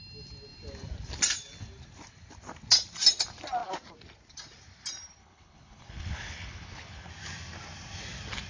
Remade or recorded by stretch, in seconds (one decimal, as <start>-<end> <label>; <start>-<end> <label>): 0.0-5.2 recorded; 5.2-7.1 remade; 7.1-8.5 recorded